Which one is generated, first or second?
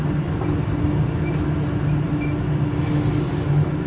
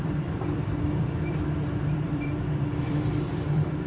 second